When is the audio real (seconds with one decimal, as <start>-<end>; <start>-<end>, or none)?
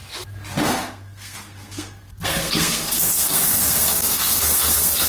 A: 0.0-0.6